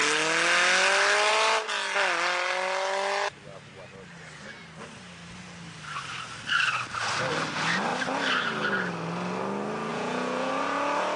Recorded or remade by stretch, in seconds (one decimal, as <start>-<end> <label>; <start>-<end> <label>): 0.0-9.9 recorded; 9.9-10.5 remade; 10.5-11.2 recorded